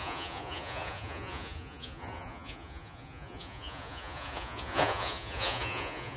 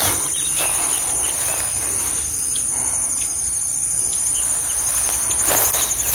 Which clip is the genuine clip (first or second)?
second